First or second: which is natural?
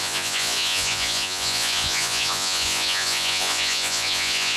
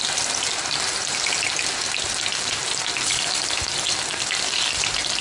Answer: second